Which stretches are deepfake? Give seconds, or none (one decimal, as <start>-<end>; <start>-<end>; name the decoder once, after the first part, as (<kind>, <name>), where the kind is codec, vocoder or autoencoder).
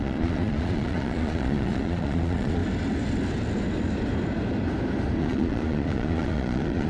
0.0-2.6 (vocoder, Vocos); 5.2-6.9